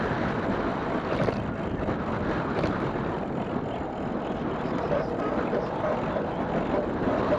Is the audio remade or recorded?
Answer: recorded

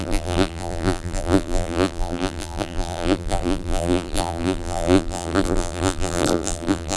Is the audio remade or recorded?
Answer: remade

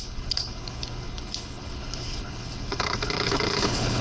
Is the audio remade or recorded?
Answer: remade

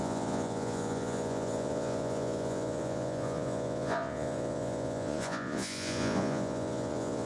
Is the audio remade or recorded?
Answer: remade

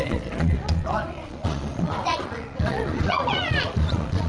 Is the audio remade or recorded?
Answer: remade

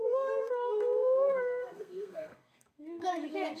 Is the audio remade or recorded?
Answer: remade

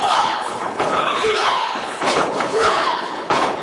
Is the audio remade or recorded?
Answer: remade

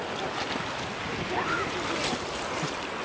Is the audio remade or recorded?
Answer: recorded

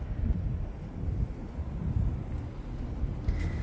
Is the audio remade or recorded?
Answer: recorded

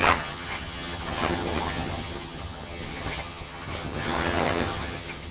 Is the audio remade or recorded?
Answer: remade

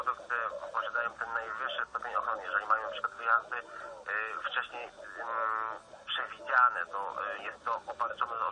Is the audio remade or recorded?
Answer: recorded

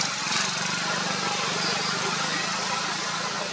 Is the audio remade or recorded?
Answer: recorded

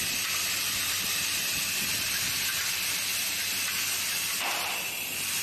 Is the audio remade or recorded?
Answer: remade